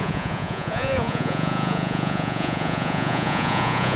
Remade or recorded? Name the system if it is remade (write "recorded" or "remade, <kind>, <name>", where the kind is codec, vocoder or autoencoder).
remade, vocoder, Vocos